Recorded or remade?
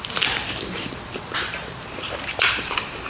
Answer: remade